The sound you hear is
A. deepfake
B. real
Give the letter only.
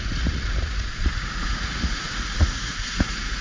A